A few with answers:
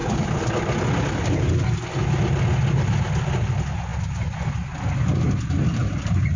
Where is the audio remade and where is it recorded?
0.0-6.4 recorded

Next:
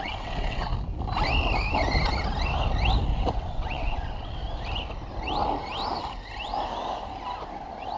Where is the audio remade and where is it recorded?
0.0-0.7 remade; 0.7-3.3 recorded; 3.3-4.4 remade; 4.4-8.0 recorded

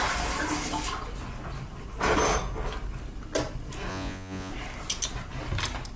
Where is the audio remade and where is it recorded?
0.0-3.9 recorded; 3.9-4.5 remade; 4.5-6.0 recorded

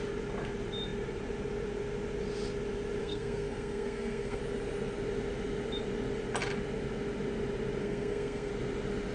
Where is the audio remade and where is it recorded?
0.0-3.0 recorded; 3.0-4.4 remade; 4.4-7.8 recorded; 7.8-8.5 remade; 8.5-9.1 recorded

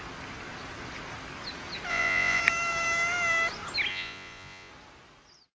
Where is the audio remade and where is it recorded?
0.0-1.9 recorded; 1.9-2.4 remade; 2.4-3.9 recorded; 3.9-4.7 remade; 4.7-5.5 recorded

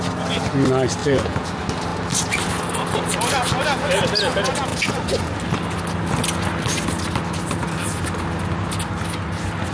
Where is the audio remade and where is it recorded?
0.0-1.0 recorded; 1.0-1.5 remade; 1.5-9.7 recorded